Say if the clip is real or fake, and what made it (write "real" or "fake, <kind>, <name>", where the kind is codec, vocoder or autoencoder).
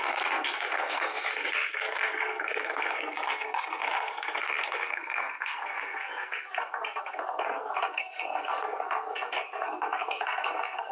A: fake, codec, SNAC